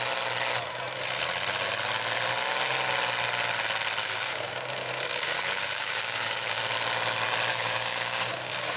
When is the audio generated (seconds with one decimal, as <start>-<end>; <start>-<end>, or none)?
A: 4.0-6.6; 7.5-8.8